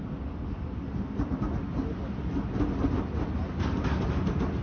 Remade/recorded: recorded